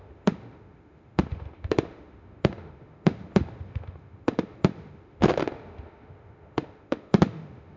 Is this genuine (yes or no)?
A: no